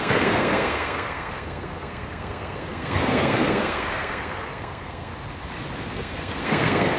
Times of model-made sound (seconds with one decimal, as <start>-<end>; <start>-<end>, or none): 0.0-5.1; 5.9-7.0